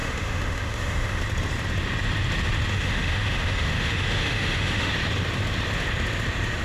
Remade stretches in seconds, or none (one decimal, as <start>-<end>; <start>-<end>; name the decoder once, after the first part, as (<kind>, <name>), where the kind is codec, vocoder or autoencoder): 0.0-1.2 (autoencoder, DAC-VAE); 2.7-4.9